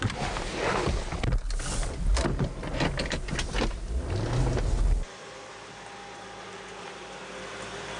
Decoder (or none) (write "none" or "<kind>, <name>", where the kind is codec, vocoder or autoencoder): none